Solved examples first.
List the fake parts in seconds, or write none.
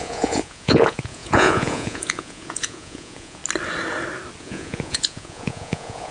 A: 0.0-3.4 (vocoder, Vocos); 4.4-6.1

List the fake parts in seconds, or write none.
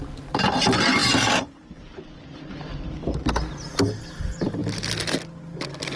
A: none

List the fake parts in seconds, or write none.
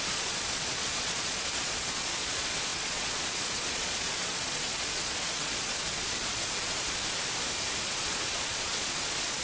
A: 0.0-7.0 (vocoder, Vocos); 7.8-9.4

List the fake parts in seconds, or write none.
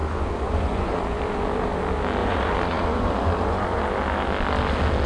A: 0.0-1.2 (vocoder, Vocos); 2.2-3.8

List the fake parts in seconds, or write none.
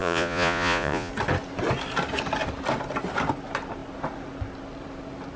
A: 0.0-1.1 (vocoder, Vocos)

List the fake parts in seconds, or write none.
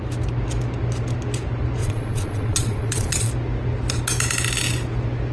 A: 1.8-3.3 (vocoder, Vocos)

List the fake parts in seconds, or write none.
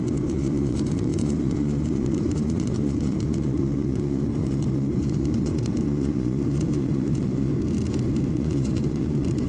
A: 0.0-7.5 (vocoder, Vocos); 8.3-9.5